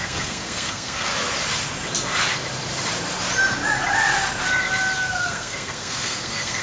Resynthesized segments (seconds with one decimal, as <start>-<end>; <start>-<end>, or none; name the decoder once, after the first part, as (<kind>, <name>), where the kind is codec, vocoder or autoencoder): 0.0-1.1 (codec, SNAC); 5.1-6.6